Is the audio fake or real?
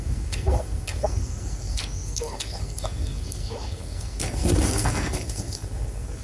fake